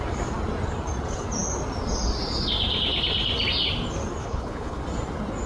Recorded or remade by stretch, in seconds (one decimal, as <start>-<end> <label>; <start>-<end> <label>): 0.0-4.2 recorded; 4.2-4.8 remade; 4.8-5.5 recorded